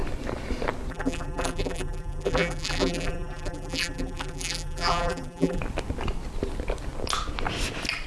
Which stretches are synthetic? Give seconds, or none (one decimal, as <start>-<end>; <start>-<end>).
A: 0.9-5.6